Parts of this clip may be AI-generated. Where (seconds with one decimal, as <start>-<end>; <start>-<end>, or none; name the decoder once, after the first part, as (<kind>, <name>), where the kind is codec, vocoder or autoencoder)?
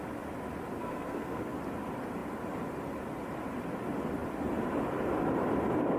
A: 0.8-1.4 (codec, SNAC)